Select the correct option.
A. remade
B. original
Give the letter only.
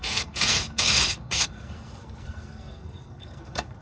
A